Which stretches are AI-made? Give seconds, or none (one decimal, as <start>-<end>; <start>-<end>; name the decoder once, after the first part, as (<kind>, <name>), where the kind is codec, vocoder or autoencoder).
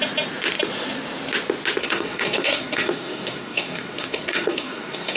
1.8-5.2 (codec, SNAC)